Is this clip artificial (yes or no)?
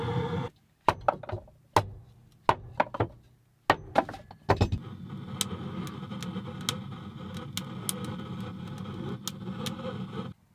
no